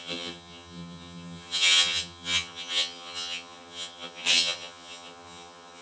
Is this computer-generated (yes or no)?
yes